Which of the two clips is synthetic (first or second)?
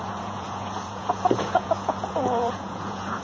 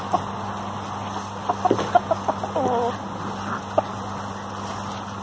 first